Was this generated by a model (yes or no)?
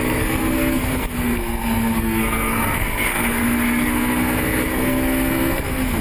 yes